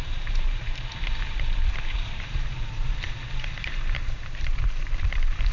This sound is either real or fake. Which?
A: fake